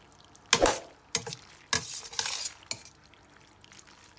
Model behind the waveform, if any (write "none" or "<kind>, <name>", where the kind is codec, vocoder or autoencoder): none